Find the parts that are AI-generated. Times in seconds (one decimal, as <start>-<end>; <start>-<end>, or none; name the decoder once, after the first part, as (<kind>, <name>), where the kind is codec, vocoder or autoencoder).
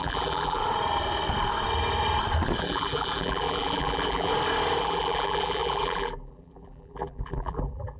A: 0.0-0.6 (vocoder, BigVGAN v2); 2.6-4.3; 4.8-8.0